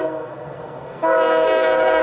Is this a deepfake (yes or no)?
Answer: yes